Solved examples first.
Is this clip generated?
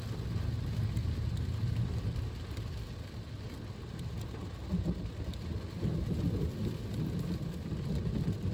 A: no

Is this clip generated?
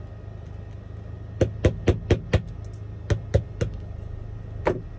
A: no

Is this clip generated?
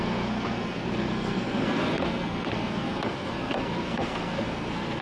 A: yes